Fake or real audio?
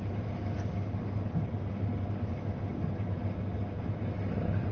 real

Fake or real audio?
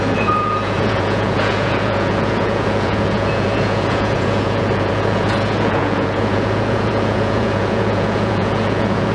fake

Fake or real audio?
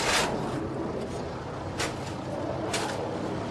real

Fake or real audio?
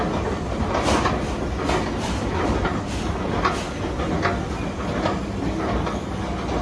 real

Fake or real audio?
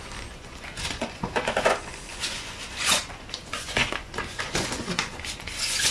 fake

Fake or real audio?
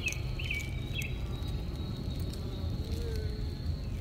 real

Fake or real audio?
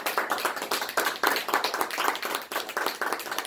real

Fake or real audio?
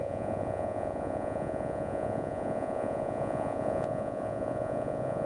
fake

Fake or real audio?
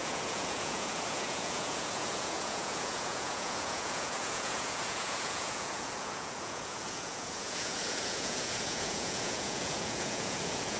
fake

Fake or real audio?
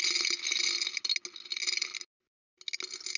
real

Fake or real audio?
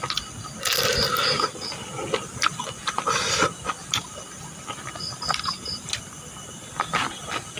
real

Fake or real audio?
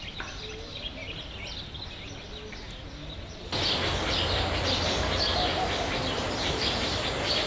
real